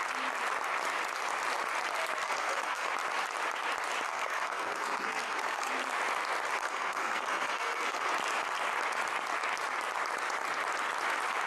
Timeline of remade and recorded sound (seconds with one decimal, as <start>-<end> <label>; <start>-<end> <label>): 0.0-2.2 recorded; 2.2-2.9 remade; 2.9-4.1 recorded; 4.1-5.7 remade; 5.7-6.6 recorded; 6.6-8.1 remade; 8.1-11.5 recorded

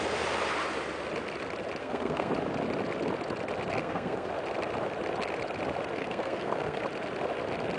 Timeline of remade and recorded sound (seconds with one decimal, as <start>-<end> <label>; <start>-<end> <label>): 0.0-1.8 recorded; 1.8-2.3 remade; 2.3-3.8 recorded; 3.8-4.3 remade; 4.3-6.0 recorded; 6.0-6.8 remade; 6.8-7.8 recorded

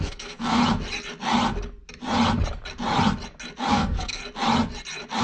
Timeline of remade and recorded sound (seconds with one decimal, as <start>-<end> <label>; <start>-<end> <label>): 0.0-0.6 remade; 0.6-3.7 recorded; 3.7-4.2 remade; 4.2-5.2 recorded

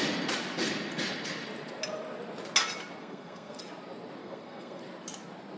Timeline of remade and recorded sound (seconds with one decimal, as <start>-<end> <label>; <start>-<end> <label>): 0.0-3.0 recorded; 3.0-3.6 remade; 3.6-4.2 recorded; 4.2-4.8 remade; 4.8-5.6 recorded

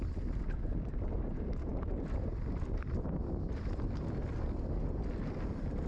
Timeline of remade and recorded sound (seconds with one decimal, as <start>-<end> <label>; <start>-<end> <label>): 0.0-5.9 recorded